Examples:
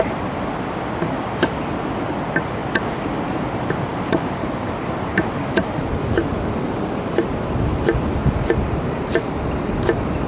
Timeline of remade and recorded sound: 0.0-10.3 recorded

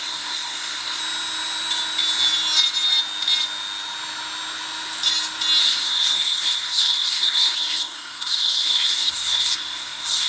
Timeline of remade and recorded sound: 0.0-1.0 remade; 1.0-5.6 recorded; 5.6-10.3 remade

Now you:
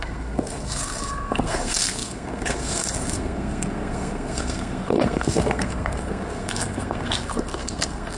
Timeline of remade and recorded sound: 0.0-8.2 remade

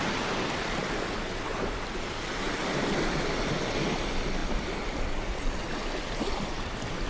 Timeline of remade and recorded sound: 0.0-7.1 recorded